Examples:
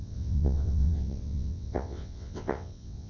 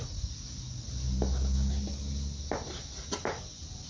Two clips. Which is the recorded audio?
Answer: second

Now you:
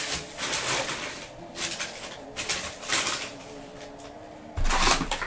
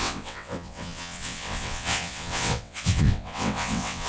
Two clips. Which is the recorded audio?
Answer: first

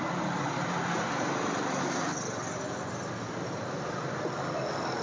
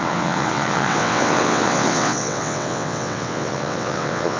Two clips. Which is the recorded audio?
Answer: first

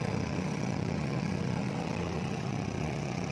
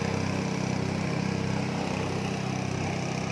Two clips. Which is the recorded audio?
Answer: second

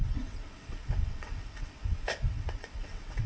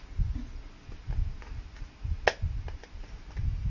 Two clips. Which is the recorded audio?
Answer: second